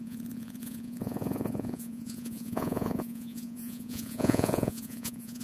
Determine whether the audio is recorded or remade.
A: remade